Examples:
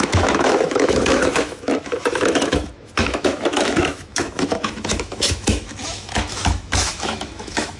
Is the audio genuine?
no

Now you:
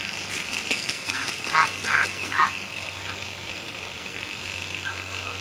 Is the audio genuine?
no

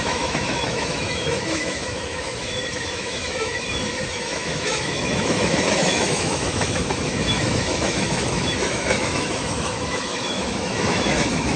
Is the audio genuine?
no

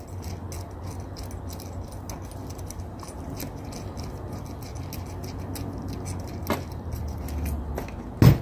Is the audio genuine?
yes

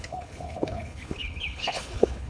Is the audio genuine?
no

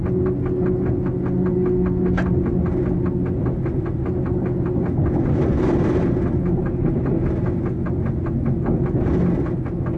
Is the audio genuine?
yes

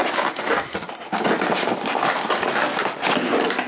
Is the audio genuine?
yes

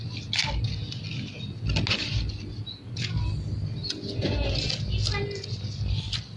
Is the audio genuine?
yes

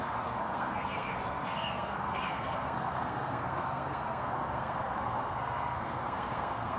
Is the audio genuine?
no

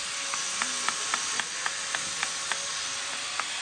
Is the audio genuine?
yes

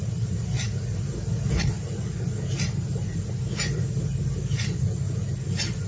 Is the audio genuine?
yes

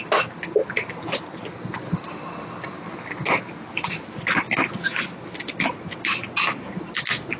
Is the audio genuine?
yes